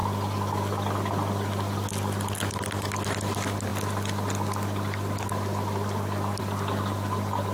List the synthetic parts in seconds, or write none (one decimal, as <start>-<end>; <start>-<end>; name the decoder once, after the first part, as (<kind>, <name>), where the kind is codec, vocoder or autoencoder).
2.5-3.7 (vocoder, BigVGAN v2); 6.4-7.5